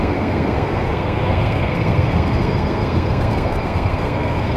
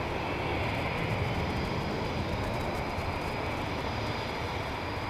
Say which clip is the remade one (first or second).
first